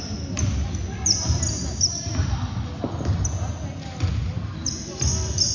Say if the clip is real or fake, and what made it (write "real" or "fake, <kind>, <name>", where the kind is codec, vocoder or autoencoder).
real